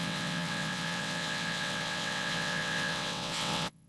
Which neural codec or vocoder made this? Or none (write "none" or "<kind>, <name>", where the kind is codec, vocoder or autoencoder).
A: vocoder, WaveNeXt